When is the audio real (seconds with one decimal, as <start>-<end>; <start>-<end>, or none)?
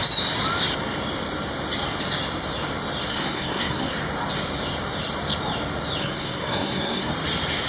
0.0-3.1; 3.9-6.0; 7.1-7.7